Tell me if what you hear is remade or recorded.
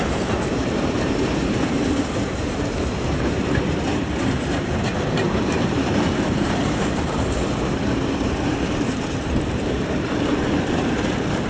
remade